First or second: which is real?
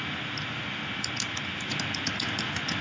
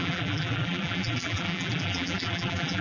first